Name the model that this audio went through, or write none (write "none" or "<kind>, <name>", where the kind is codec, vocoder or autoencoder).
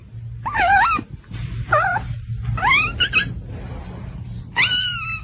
none